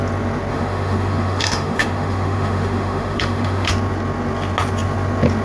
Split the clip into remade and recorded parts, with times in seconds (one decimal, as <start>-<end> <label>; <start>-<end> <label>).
0.0-0.5 recorded; 0.5-3.7 remade; 3.7-5.4 recorded